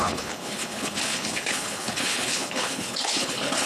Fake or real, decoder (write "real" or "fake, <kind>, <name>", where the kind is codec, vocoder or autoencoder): fake, codec, HILCodec